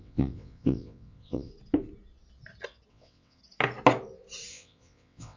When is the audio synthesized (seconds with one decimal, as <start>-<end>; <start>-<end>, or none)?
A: 0.0-1.5; 2.9-3.4; 4.5-5.4

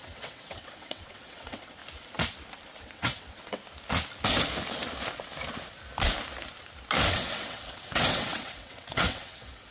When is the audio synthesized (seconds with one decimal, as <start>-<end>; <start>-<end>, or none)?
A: 0.0-1.8; 2.8-3.6; 7.1-9.7

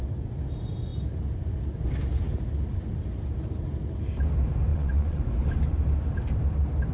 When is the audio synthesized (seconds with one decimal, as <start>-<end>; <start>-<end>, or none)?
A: 4.7-5.2

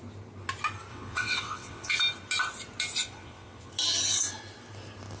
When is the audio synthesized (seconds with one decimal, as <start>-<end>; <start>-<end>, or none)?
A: 0.9-2.0; 3.0-3.7

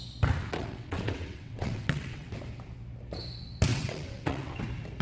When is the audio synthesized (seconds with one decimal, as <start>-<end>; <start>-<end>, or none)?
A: 0.4-2.3; 3.7-4.6